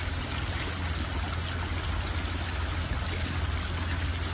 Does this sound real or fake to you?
real